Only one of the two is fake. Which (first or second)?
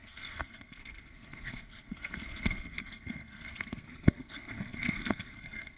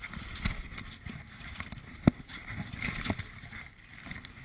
first